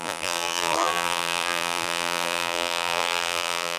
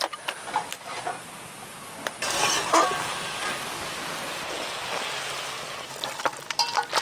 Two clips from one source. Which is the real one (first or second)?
second